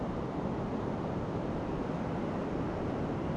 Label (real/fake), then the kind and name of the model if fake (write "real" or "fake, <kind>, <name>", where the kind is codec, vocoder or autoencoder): real